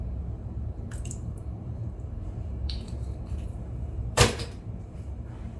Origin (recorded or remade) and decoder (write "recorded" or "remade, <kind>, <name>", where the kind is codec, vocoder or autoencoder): remade, vocoder, BigVGAN v2